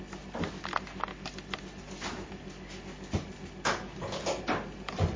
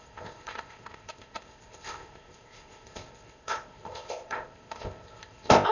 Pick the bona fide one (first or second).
first